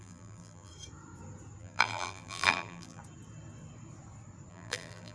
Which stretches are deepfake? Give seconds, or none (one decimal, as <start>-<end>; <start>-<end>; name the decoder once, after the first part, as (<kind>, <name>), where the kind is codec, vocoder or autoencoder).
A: 0.0-0.7 (vocoder, BigVGAN v2); 1.6-3.0; 4.5-5.1